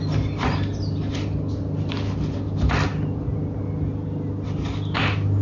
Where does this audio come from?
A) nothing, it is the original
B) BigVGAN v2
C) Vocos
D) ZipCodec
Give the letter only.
A